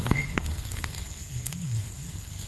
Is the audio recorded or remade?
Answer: remade